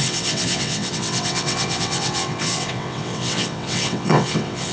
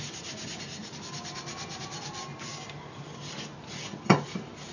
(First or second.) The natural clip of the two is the second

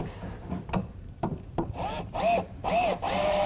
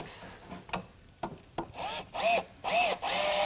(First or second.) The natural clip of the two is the second